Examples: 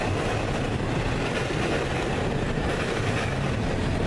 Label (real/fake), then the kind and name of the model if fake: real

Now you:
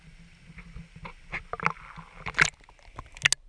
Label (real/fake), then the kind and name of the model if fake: real